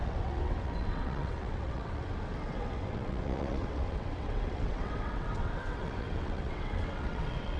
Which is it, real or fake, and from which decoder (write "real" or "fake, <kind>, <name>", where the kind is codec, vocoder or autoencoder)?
fake, vocoder, WaveNeXt